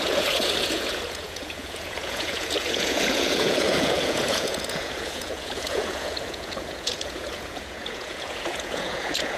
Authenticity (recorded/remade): remade